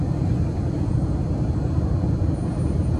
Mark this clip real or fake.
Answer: fake